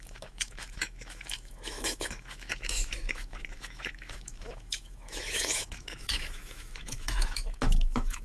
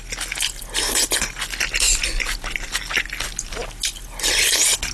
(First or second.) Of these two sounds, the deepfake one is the first